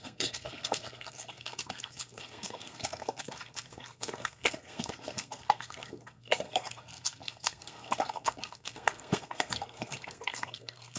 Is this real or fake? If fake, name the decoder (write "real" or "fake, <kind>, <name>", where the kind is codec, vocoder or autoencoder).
fake, codec, SNAC